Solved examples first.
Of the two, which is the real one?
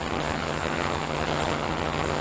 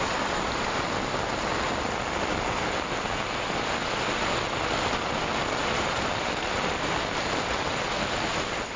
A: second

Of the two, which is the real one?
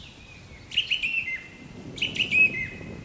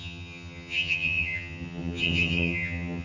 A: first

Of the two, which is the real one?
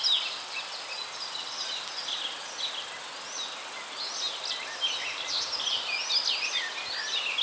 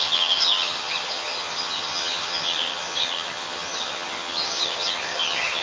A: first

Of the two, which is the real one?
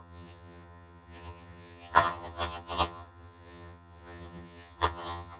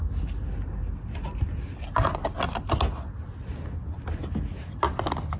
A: second